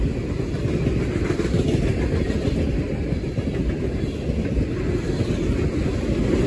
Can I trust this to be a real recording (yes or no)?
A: yes